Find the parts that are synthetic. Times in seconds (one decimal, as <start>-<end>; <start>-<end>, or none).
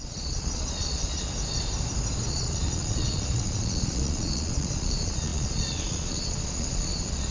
0.0-1.3; 2.3-7.3